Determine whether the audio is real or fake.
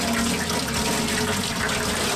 real